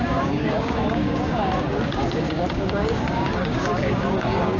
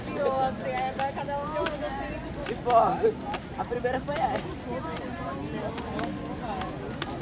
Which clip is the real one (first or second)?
second